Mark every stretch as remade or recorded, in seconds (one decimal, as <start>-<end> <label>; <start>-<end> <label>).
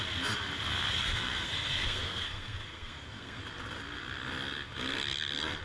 0.0-1.0 recorded; 1.0-3.4 remade; 3.4-5.6 recorded